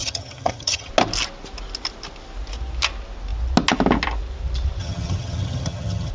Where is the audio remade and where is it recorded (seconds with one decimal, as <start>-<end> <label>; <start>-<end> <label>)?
0.0-0.9 remade; 0.9-4.8 recorded; 4.8-6.1 remade